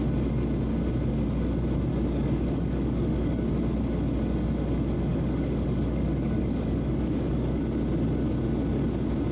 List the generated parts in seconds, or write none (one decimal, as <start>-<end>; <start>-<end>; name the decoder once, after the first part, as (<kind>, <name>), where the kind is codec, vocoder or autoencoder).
1.9-3.5 (codec, DAC); 5.1-7.6